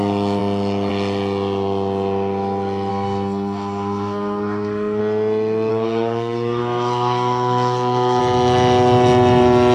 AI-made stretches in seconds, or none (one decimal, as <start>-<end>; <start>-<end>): 2.9-5.0; 5.7-8.2